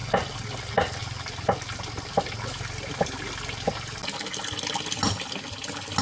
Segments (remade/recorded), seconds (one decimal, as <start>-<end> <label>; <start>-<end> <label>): 0.0-6.0 recorded